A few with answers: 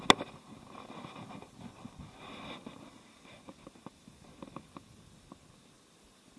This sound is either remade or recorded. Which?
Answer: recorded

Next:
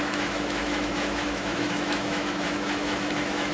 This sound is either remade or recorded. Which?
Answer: remade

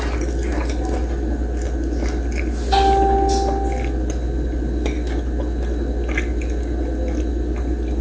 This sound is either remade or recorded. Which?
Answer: recorded